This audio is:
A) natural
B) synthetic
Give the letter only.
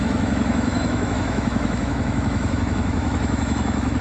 B